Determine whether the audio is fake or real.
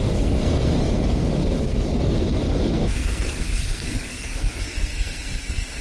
fake